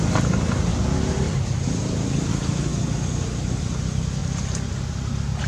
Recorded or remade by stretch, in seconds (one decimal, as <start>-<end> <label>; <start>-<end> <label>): 0.0-0.7 remade; 0.7-2.3 recorded; 2.3-2.7 remade; 2.7-3.6 recorded; 3.6-4.2 remade; 4.2-5.1 recorded; 5.1-5.5 remade